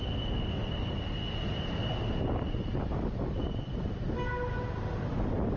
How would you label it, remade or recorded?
recorded